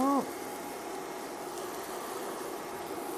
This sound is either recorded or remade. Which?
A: recorded